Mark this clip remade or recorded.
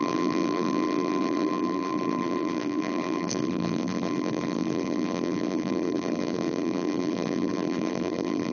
remade